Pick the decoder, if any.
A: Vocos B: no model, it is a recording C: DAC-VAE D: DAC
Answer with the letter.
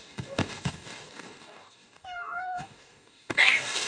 D